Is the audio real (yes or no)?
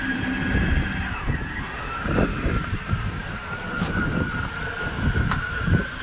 no